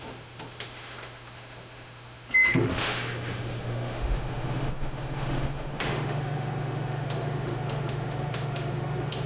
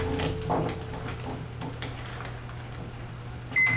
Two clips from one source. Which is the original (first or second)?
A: second